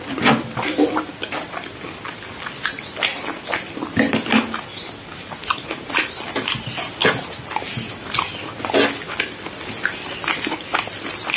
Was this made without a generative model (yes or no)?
yes